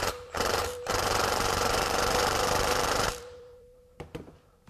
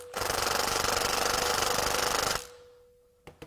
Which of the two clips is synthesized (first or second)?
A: first